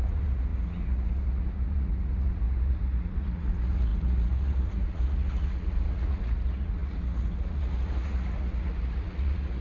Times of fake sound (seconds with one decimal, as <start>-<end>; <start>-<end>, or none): 0.0-9.6